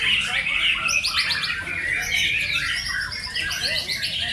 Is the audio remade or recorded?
recorded